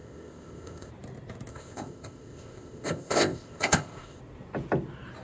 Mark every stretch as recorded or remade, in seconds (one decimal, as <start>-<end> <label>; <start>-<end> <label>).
0.0-0.9 remade; 0.9-1.5 recorded; 1.5-4.2 remade; 4.2-5.2 recorded